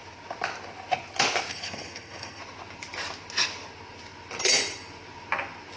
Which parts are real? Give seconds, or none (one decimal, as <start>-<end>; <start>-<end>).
0.0-1.5; 2.4-5.8